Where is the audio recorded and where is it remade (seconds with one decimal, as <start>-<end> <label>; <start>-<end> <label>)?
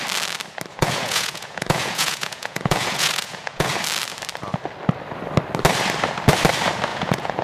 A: 0.0-0.7 recorded; 0.7-3.7 remade; 3.7-6.9 recorded; 6.9-7.4 remade